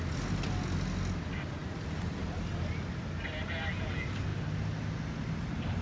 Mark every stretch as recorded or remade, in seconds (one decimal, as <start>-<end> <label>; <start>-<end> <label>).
0.0-5.8 recorded